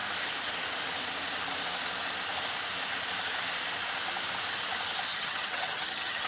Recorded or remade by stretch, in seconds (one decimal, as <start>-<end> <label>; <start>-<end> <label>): 0.0-5.1 recorded; 5.1-6.3 remade